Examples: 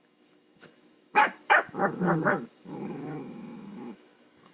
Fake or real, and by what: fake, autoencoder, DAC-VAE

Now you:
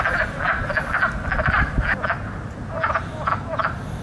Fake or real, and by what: real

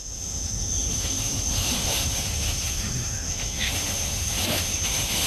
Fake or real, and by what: fake, autoencoder, DAC-VAE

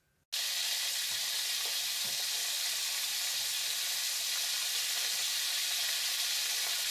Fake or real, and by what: real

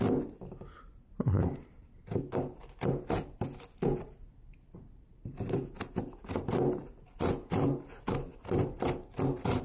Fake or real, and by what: real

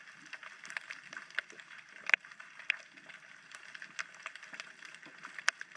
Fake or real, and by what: real